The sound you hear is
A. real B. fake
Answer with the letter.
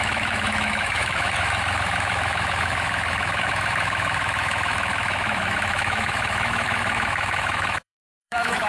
B